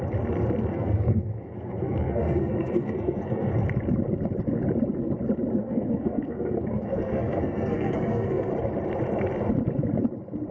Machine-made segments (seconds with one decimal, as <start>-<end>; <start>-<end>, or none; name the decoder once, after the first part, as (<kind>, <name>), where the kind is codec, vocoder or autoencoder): 0.7-3.6 (codec, SNAC); 5.6-8.5

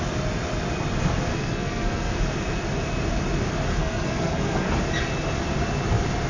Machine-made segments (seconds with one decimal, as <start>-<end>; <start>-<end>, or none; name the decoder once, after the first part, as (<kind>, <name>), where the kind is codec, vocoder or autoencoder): 1.3-2.2 (codec, SNAC); 3.7-4.7